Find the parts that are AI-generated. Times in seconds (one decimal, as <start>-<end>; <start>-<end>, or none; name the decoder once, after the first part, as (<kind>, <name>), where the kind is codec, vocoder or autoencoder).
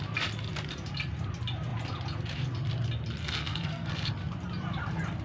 3.2-4.1 (codec, SNAC)